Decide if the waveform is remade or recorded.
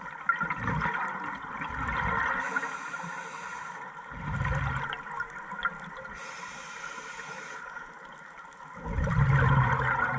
recorded